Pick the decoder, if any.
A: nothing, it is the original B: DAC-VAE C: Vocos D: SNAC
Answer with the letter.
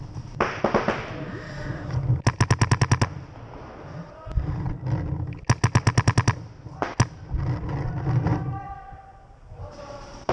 A